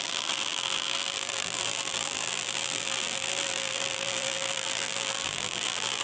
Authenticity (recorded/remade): remade